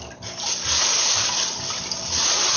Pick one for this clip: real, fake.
real